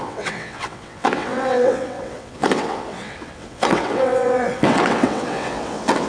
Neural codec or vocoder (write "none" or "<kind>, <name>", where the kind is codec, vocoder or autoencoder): vocoder, WaveNeXt